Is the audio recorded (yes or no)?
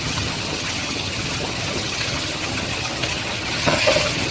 no